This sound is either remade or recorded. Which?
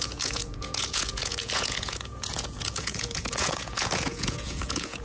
remade